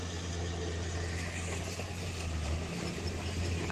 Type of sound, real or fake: real